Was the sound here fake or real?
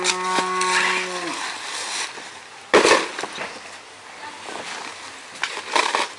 real